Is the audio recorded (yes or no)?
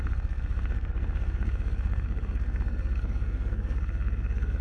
no